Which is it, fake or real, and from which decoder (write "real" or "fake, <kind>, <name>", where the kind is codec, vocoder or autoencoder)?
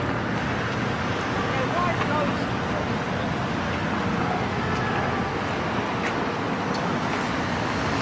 real